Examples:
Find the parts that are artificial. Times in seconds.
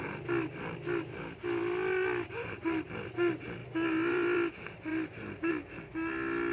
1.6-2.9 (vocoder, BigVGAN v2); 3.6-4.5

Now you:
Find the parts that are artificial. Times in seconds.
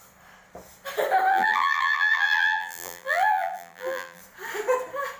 1.3-4.2 (vocoder, BigVGAN v2)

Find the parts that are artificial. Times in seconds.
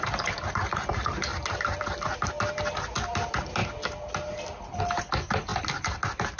none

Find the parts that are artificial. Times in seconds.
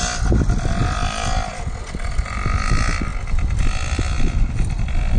none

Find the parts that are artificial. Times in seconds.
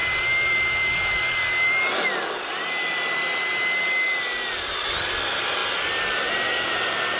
none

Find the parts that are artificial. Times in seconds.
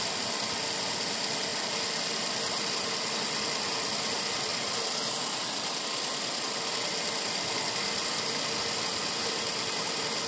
none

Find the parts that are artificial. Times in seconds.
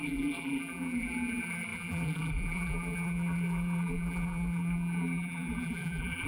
0.0-6.3 (vocoder, BigVGAN v2)